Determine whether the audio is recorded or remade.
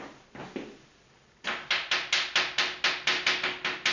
recorded